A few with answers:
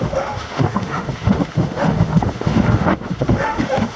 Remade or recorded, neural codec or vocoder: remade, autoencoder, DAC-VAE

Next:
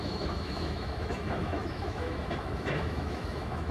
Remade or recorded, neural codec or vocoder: remade, autoencoder, DAC-VAE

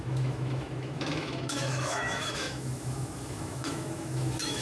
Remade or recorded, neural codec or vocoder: remade, autoencoder, DAC-VAE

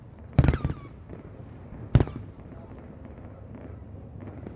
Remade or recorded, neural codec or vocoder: recorded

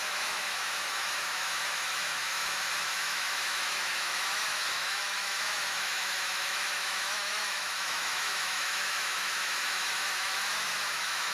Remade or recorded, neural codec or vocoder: remade, autoencoder, DAC-VAE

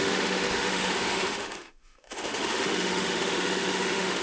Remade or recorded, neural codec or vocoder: remade, autoencoder, DAC-VAE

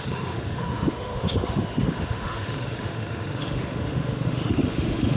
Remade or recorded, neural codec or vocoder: remade, autoencoder, DAC-VAE